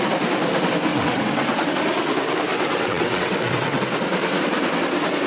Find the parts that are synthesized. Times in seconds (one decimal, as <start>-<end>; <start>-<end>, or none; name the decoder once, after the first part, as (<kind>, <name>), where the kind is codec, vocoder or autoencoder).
0.9-1.7 (vocoder, WaveNeXt); 2.5-3.8